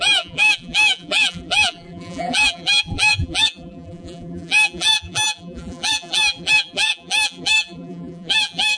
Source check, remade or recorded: remade